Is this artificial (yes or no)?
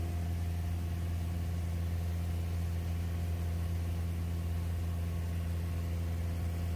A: no